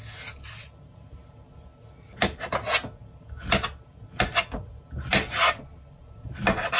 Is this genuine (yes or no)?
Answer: yes